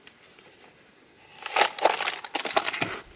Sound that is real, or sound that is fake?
real